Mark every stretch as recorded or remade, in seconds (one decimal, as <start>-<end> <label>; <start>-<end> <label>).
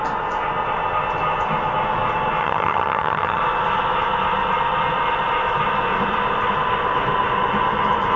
0.0-2.4 recorded; 2.4-3.4 remade; 3.4-8.2 recorded